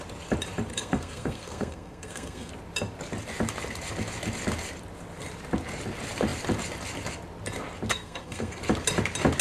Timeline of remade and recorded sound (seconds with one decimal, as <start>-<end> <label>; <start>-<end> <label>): 0.0-0.7 recorded; 0.7-2.5 remade; 2.5-7.9 recorded; 7.9-8.6 remade; 8.6-9.4 recorded